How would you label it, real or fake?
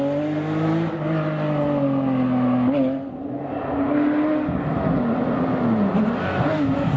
real